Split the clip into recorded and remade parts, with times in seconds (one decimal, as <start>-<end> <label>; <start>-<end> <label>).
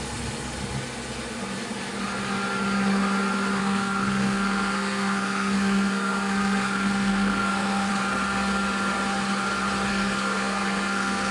0.0-3.6 recorded; 3.6-7.9 remade; 7.9-9.9 recorded; 9.9-11.3 remade